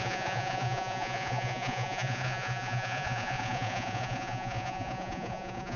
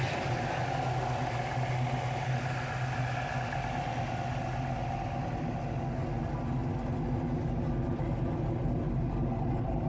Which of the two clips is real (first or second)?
second